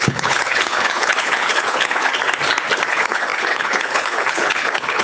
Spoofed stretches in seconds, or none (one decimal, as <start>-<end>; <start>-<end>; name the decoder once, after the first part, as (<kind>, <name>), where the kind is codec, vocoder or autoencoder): 0.0-2.1 (codec, HILCodec); 2.9-5.0